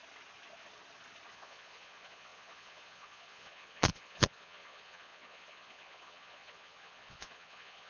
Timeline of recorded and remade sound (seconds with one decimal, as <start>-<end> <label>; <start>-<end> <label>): 0.0-1.3 recorded; 1.3-7.9 remade